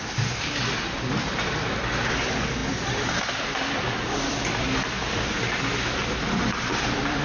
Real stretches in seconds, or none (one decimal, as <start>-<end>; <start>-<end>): 0.0-7.2